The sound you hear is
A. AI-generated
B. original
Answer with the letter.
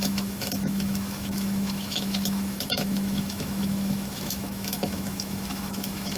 A